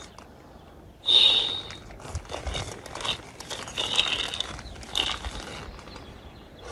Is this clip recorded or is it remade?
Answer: recorded